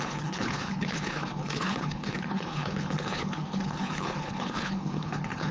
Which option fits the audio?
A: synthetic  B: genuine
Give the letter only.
A